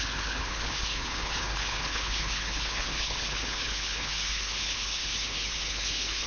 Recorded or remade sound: remade